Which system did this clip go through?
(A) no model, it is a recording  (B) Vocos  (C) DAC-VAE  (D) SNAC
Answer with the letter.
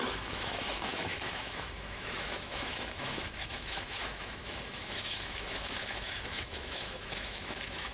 C